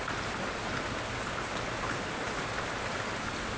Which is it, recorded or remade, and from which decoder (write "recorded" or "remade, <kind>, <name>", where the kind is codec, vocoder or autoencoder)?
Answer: recorded